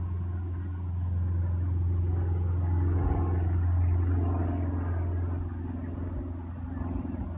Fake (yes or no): no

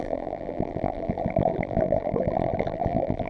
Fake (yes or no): yes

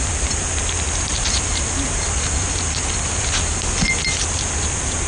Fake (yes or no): no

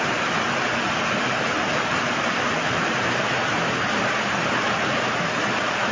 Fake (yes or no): yes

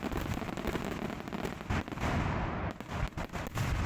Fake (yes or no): no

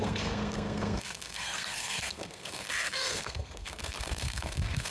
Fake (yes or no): yes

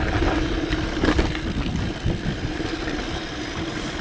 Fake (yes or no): no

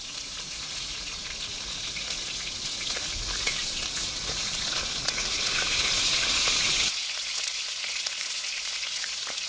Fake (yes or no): yes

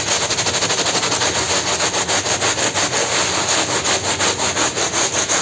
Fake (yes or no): no